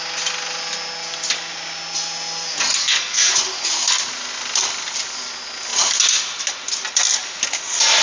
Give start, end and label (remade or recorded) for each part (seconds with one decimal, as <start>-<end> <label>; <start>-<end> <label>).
0.0-2.8 recorded; 2.8-3.3 remade; 3.3-8.0 recorded